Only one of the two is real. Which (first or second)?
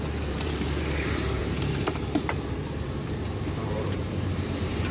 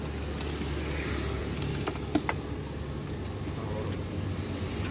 second